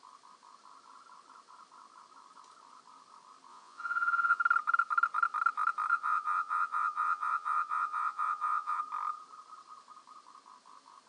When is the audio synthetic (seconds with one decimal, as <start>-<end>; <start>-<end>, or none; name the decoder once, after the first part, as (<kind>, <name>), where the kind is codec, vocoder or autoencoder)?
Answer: 3.5-4.4 (vocoder, Vocos); 5.9-8.8